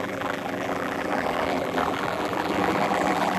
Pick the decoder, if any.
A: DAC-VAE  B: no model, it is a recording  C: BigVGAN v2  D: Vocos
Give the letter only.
C